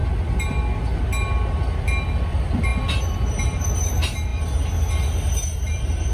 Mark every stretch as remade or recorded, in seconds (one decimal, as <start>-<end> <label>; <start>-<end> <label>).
0.0-6.1 recorded